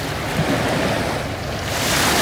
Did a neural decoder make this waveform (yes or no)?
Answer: no